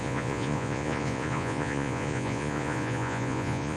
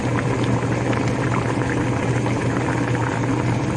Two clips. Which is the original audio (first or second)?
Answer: second